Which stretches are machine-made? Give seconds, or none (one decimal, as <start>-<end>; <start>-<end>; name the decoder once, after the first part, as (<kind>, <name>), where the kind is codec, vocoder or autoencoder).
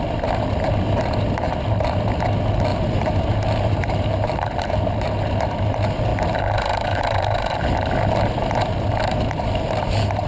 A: 2.7-4.8 (vocoder, BigVGAN v2); 6.1-7.7